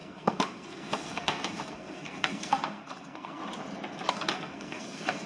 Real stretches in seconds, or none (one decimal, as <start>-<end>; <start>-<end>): 3.4-4.1